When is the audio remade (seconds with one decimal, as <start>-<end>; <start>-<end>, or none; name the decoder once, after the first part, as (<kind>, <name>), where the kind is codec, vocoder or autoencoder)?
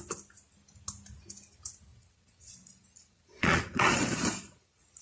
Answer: 1.9-5.0 (vocoder, Vocos)